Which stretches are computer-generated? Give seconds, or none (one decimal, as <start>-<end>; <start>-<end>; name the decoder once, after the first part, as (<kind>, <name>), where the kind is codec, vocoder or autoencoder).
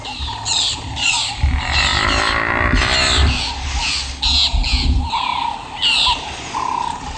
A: 1.9-2.8 (vocoder, BigVGAN v2)